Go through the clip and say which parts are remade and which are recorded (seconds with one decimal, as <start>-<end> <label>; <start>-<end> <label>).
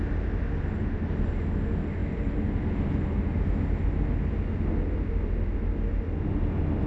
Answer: 0.0-6.9 recorded